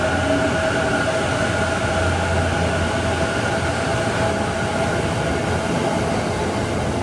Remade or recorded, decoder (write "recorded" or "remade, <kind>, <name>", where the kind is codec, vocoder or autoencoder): recorded